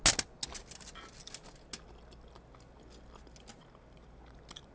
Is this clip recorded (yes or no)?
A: yes